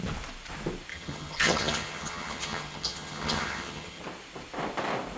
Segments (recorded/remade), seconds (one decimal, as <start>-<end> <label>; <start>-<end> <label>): 0.0-0.9 recorded; 0.9-4.0 remade; 4.0-5.2 recorded